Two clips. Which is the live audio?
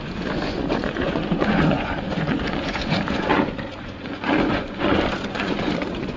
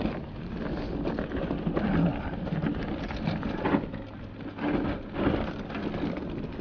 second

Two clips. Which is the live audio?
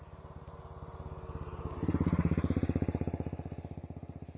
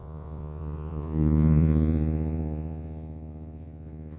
first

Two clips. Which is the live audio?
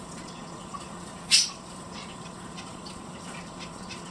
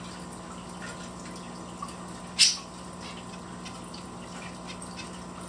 second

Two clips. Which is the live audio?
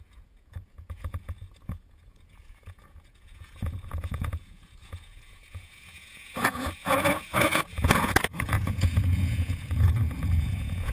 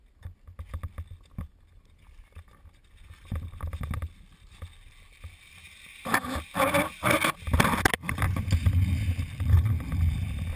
second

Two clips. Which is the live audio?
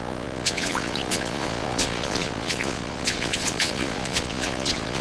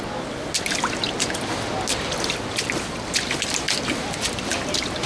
second